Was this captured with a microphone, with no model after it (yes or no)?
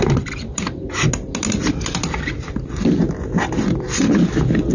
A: yes